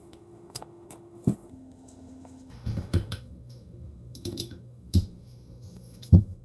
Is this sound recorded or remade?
remade